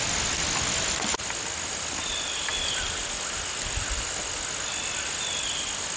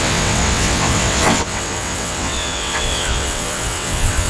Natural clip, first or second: first